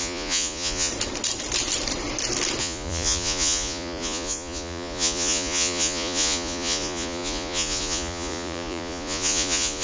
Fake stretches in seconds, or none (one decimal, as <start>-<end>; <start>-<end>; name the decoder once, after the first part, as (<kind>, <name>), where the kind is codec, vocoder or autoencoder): 0.0-0.9 (vocoder, Vocos); 2.6-9.8